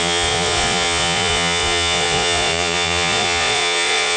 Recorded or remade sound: remade